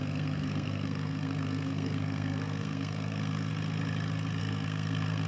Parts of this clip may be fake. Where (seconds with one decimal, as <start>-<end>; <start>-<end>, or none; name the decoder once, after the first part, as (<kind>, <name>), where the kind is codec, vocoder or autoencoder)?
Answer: 0.0-3.5 (codec, SNAC); 4.4-5.3